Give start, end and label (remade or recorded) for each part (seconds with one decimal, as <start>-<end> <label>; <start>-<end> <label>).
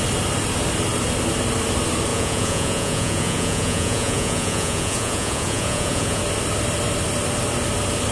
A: 0.0-2.1 recorded; 2.1-6.2 remade; 6.2-8.1 recorded